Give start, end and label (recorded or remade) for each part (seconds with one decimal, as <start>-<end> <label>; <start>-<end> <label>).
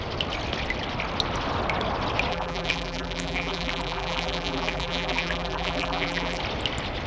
0.0-2.3 recorded; 2.3-6.4 remade; 6.4-7.1 recorded